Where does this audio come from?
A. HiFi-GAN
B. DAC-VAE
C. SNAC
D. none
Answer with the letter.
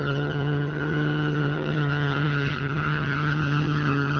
A